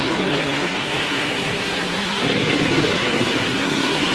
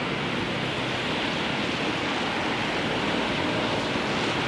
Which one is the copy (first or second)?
first